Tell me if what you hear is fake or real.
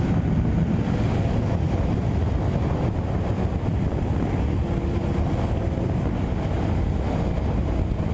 real